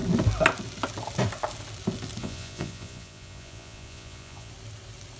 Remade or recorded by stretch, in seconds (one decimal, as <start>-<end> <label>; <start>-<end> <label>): 0.0-2.2 recorded; 2.2-4.5 remade; 4.5-5.2 recorded